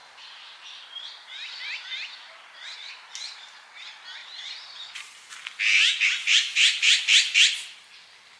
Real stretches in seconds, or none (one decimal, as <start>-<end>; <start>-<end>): 0.0-4.2; 5.3-6.2; 7.0-8.4